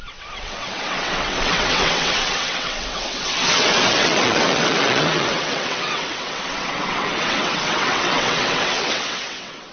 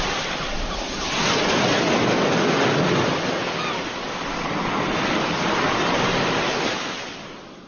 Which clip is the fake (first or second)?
first